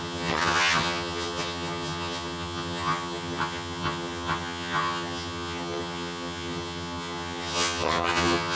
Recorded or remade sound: remade